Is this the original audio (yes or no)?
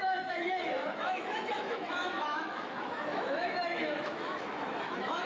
no